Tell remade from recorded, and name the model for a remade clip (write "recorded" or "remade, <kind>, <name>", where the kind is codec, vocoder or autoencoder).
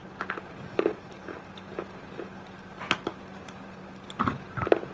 recorded